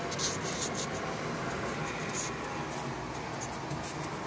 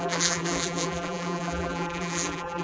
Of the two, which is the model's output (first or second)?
second